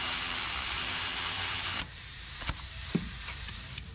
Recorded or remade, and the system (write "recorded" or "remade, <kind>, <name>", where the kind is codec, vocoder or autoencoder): remade, vocoder, BigVGAN v2